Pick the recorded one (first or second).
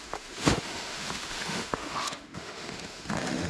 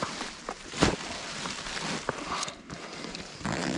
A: second